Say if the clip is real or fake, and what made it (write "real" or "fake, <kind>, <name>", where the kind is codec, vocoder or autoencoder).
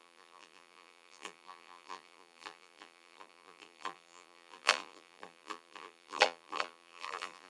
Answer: fake, vocoder, BigVGAN v2